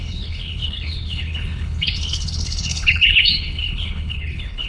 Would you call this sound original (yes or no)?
no